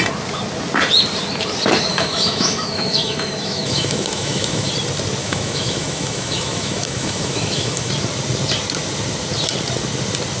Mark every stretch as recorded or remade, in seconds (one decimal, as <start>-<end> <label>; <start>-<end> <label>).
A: 0.0-1.9 recorded; 1.9-4.7 remade; 4.7-5.2 recorded; 5.2-7.9 remade; 7.9-10.4 recorded